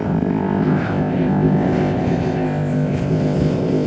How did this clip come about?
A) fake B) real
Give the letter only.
A